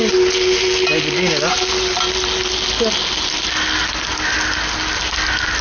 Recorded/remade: recorded